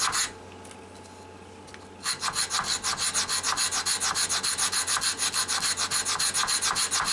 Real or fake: real